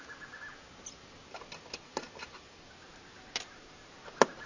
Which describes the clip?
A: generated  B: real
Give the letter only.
B